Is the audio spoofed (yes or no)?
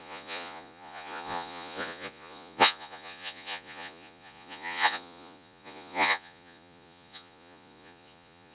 yes